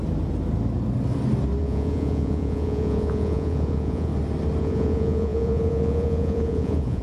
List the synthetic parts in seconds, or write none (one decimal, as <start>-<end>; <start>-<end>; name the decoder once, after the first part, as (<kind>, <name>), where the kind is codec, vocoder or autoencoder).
1.6-4.1 (vocoder, Vocos); 4.6-7.0